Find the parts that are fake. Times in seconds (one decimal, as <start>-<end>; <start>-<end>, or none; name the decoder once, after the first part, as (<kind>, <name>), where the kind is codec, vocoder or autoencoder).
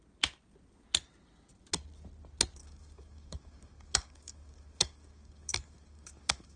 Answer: 2.6-6.6 (codec, DAC)